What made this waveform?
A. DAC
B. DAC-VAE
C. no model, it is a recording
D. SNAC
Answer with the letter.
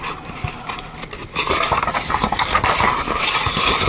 C